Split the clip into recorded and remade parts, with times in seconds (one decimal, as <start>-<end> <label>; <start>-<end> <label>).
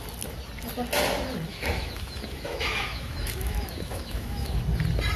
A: 0.0-1.5 recorded; 1.5-4.6 remade; 4.6-5.2 recorded